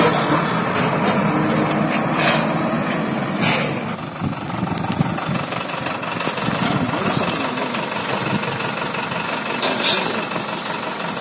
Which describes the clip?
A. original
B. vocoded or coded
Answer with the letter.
A